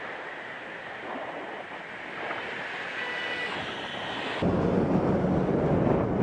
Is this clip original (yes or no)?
yes